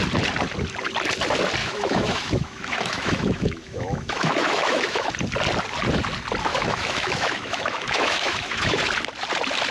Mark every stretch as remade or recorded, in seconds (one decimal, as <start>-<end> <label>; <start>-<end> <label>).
0.0-1.6 recorded; 1.6-5.1 remade; 5.1-6.5 recorded; 6.5-8.8 remade; 8.8-9.7 recorded